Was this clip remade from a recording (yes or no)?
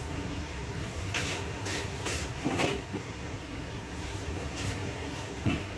yes